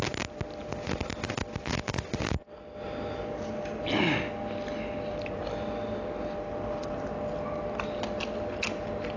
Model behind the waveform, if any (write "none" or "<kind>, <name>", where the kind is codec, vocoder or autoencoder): none